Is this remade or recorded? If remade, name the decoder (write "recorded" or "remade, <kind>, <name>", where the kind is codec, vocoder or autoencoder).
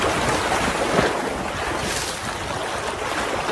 recorded